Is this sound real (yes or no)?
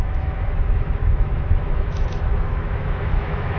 no